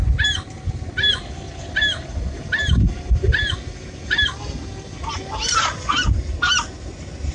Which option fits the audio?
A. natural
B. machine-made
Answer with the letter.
A